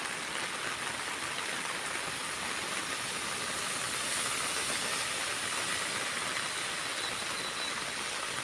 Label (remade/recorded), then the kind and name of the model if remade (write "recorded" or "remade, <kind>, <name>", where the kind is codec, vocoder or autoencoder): recorded